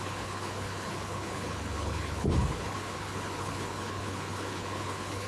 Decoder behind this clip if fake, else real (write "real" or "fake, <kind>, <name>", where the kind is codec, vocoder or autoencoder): fake, codec, HILCodec